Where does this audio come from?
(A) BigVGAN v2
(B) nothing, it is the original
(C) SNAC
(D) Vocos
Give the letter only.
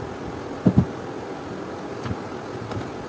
B